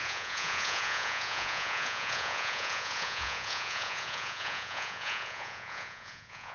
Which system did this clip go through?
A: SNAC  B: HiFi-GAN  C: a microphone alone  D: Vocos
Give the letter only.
D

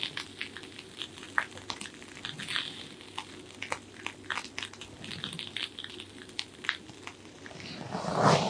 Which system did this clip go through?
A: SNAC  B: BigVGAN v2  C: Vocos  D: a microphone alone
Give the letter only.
D